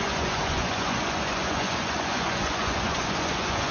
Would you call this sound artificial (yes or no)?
yes